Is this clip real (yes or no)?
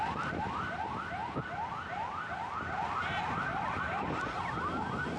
yes